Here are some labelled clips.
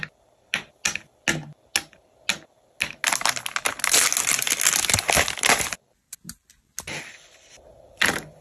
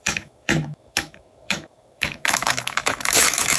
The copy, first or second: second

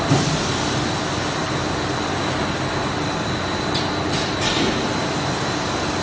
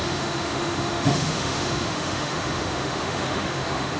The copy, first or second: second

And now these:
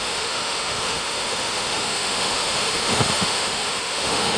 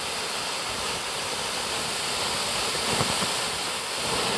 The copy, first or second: first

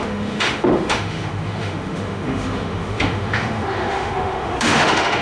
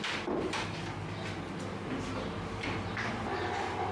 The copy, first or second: first